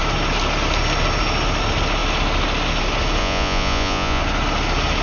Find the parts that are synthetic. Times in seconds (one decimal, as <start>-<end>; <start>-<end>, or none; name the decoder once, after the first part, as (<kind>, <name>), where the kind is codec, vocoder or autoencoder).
3.2-4.2 (vocoder, Vocos)